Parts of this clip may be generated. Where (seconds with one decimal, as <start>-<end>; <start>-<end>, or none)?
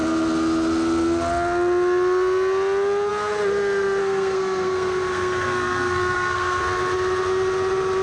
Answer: 4.0-6.6